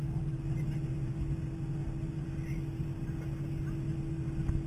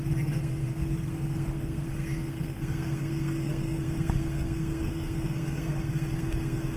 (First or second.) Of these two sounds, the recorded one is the first